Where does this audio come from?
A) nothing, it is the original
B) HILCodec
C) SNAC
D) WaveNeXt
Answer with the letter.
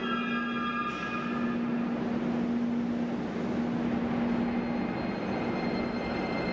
A